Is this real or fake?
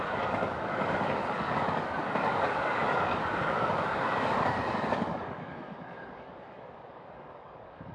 fake